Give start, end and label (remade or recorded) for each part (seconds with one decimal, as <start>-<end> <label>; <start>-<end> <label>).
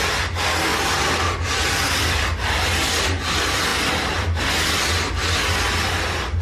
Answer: 0.0-0.7 recorded; 0.7-2.9 remade; 2.9-3.7 recorded; 3.7-4.5 remade; 4.5-6.4 recorded